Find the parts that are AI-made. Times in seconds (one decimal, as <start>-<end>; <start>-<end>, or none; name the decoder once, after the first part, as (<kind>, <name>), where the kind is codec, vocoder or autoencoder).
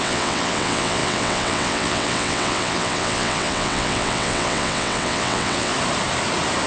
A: 0.0-5.7 (vocoder, WaveNeXt)